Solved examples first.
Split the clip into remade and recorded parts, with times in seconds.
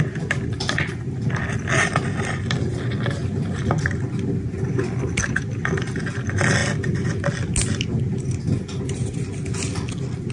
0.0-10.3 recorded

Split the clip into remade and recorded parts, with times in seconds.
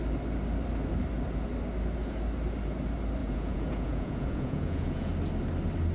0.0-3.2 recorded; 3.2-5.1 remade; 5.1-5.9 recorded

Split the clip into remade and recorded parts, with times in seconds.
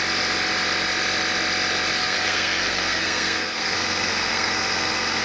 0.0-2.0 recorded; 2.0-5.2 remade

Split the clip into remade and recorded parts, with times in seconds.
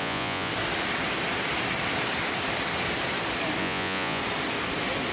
0.0-0.5 remade; 0.5-3.6 recorded; 3.6-4.2 remade; 4.2-5.1 recorded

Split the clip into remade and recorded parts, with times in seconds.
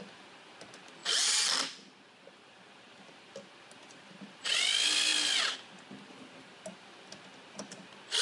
0.0-8.2 recorded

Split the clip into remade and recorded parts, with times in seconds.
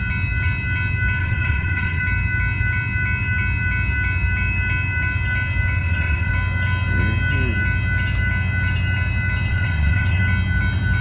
0.0-1.2 recorded; 1.2-2.0 remade; 2.0-5.8 recorded; 5.8-6.3 remade; 6.3-9.5 recorded; 9.5-10.2 remade; 10.2-11.0 recorded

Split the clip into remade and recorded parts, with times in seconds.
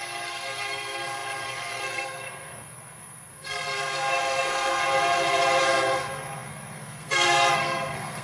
0.0-4.8 remade; 4.8-5.6 recorded; 5.6-8.2 remade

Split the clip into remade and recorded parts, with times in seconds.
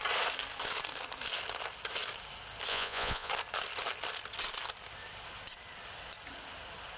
0.0-2.7 recorded; 2.7-3.3 remade; 3.3-7.0 recorded